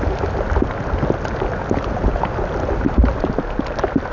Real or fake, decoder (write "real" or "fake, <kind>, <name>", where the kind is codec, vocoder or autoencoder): real